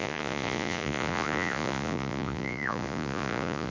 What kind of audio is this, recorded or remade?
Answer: remade